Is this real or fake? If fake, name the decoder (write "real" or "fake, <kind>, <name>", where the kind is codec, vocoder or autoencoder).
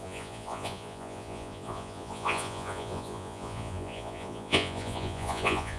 fake, vocoder, Vocos